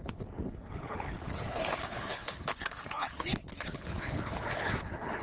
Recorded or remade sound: remade